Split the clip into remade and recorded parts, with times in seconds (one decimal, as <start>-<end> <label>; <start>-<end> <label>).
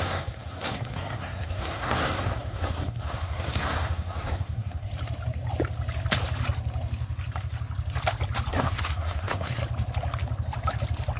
0.0-4.9 remade; 4.9-8.5 recorded; 8.5-9.6 remade; 9.6-11.2 recorded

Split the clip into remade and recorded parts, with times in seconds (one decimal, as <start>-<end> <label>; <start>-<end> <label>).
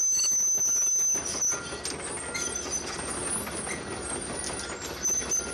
0.0-5.5 recorded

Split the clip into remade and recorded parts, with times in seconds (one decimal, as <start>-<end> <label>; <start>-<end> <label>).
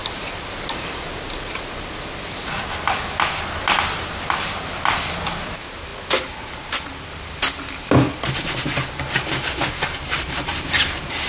0.0-11.3 recorded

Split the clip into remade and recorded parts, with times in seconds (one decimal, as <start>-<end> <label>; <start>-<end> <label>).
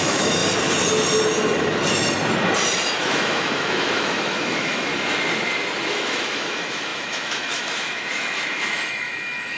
0.0-0.4 remade; 0.4-3.0 recorded; 3.0-4.9 remade; 4.9-5.9 recorded; 5.9-9.6 remade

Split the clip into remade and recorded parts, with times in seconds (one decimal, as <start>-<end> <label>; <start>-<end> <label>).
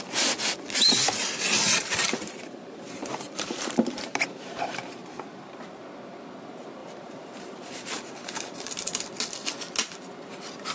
0.0-1.8 recorded; 1.8-5.8 remade; 5.8-6.8 recorded; 6.8-8.7 remade; 8.7-10.7 recorded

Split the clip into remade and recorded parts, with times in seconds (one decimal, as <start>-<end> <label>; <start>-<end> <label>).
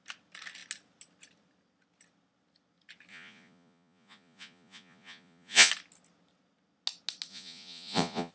0.0-3.1 recorded; 3.1-5.7 remade; 5.7-7.3 recorded; 7.3-8.3 remade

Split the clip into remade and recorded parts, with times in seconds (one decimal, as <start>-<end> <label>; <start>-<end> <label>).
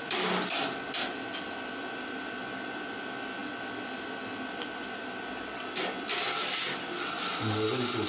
0.0-8.1 recorded